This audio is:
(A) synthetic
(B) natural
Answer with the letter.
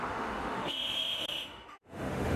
A